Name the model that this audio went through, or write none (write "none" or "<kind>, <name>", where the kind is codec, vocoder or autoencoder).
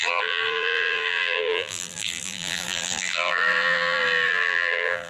vocoder, BigVGAN v2